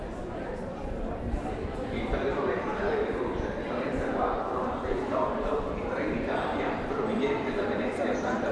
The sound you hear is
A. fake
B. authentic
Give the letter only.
A